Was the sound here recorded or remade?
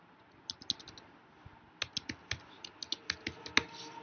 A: recorded